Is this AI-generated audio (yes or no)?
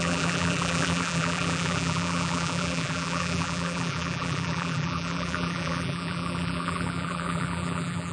yes